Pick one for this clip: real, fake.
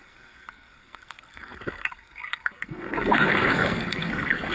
fake